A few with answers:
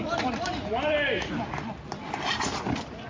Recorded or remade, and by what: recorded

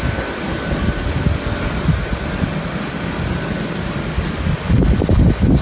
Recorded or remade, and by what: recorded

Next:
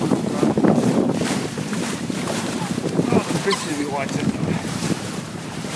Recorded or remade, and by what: remade, vocoder, BigVGAN v2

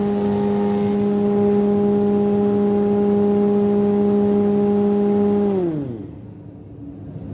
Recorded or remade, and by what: recorded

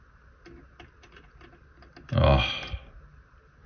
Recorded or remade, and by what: recorded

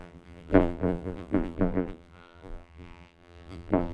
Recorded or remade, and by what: remade, vocoder, BigVGAN v2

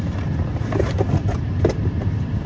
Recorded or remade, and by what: recorded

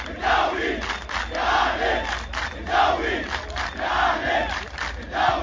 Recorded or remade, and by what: recorded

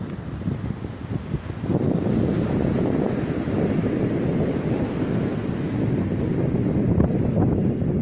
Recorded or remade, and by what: recorded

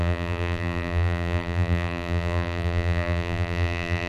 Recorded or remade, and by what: remade, vocoder, BigVGAN v2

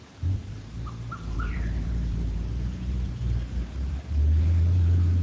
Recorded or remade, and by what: remade, vocoder, BigVGAN v2